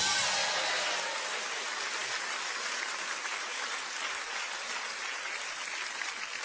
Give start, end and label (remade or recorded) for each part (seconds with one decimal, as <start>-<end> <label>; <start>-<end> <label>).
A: 0.0-6.4 recorded